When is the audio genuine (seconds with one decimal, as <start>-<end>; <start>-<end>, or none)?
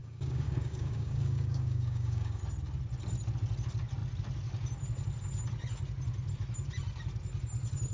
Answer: 2.4-7.9